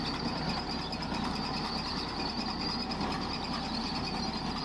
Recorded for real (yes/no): yes